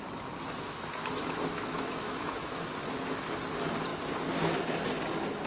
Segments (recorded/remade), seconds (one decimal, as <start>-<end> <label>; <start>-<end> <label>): 0.0-1.0 recorded; 1.0-2.7 remade; 2.7-5.5 recorded